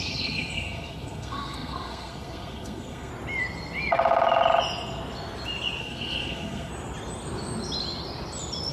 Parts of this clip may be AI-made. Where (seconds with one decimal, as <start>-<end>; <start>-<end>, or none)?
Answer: 0.0-3.1; 5.8-6.7